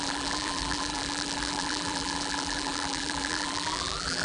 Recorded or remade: remade